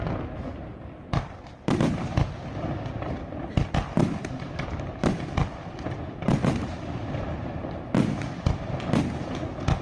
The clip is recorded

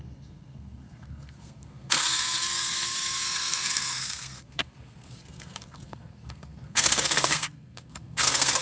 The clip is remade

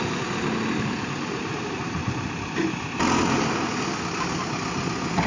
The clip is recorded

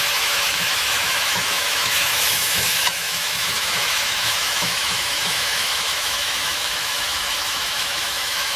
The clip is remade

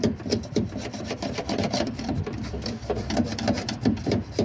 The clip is remade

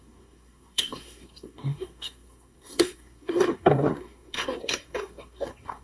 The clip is remade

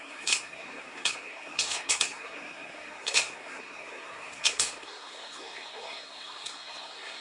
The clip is remade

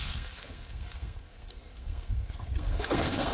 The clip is remade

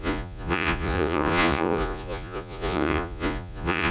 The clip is remade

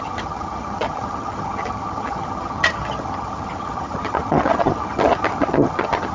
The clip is remade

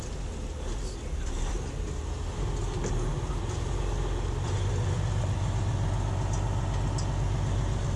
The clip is recorded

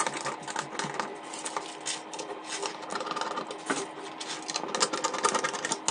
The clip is recorded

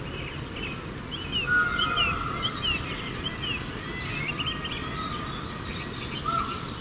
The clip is recorded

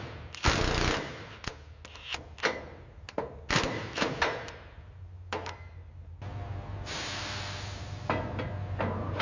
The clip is recorded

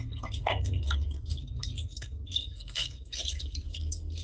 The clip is remade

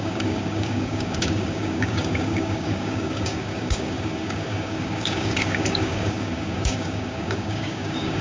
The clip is remade